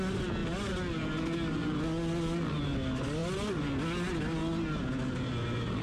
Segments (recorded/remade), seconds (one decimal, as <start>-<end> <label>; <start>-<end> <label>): 0.0-5.8 recorded